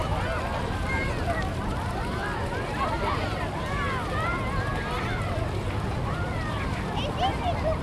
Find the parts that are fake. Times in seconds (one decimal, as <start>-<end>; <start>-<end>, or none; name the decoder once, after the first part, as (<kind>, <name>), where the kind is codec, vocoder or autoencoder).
0.0-7.8 (vocoder, BigVGAN v2)